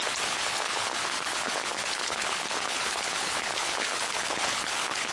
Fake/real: fake